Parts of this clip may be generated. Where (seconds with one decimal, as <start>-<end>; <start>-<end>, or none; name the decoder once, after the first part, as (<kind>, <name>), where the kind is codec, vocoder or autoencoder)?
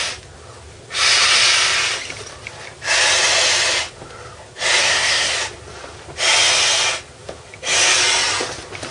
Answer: 4.8-5.3 (codec, SNAC)